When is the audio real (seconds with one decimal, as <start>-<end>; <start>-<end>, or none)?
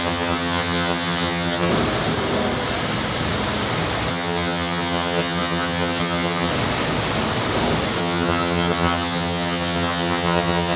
1.7-4.1; 6.5-8.0